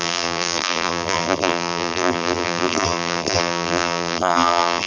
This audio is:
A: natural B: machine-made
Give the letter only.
B